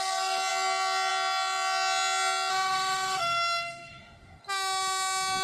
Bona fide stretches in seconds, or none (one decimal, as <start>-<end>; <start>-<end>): 0.0-2.5; 4.4-5.4